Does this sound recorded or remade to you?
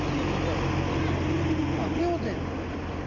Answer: recorded